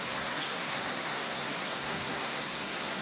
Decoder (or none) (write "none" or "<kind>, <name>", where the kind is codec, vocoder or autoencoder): codec, SNAC